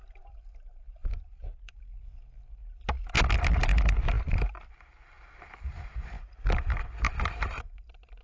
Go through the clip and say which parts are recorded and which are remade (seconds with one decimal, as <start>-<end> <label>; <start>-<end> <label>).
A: 0.0-1.0 recorded; 1.0-1.8 remade; 1.8-3.6 recorded; 3.6-7.6 remade; 7.6-8.2 recorded